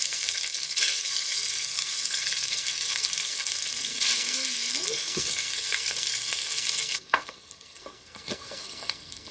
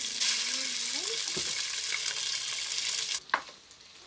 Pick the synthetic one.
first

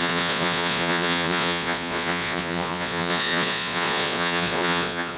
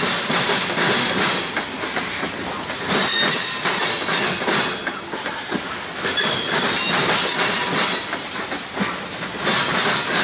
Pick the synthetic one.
first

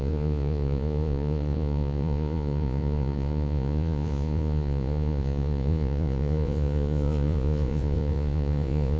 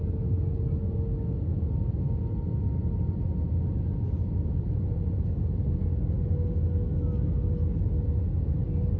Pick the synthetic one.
first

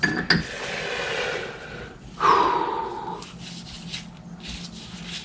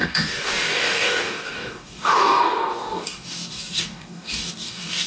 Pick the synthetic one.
second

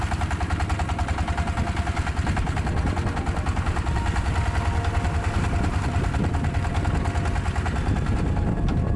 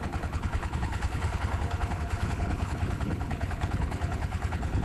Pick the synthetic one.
second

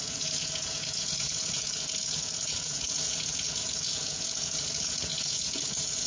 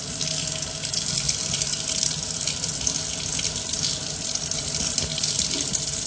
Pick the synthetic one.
first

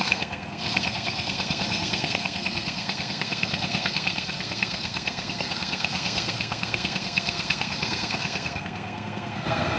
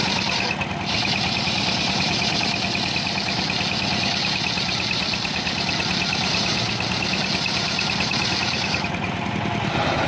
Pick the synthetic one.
first